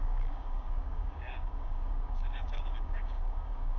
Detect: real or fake fake